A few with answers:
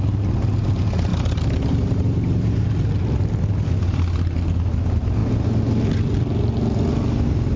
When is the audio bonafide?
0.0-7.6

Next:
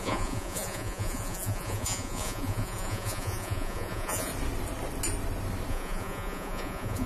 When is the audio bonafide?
4.3-5.7

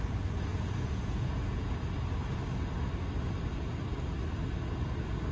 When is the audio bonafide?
0.0-0.5; 1.7-5.3

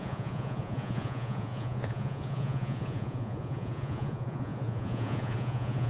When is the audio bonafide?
none

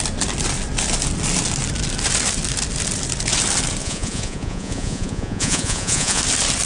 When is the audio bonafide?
0.0-3.8; 6.2-6.7

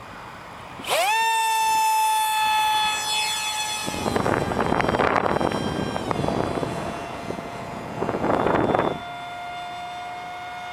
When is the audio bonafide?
0.0-3.8; 4.7-6.6; 9.0-10.7

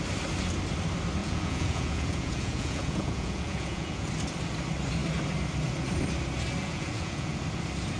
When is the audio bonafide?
0.0-1.2; 4.1-6.6; 7.4-8.0